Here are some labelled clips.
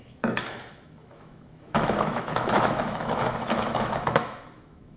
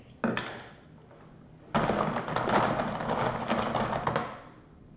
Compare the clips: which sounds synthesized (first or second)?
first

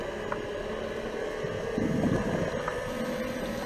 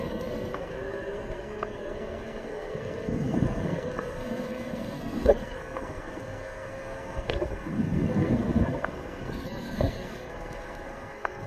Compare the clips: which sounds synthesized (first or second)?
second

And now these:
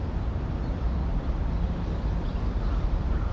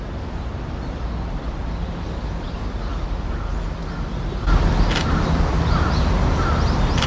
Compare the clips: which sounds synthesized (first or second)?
first